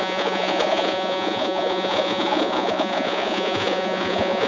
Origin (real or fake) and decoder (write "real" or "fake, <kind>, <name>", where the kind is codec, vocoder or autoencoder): fake, vocoder, Vocos